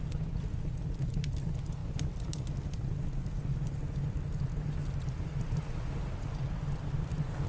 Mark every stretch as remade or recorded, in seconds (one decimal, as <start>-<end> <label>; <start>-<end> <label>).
0.0-7.5 recorded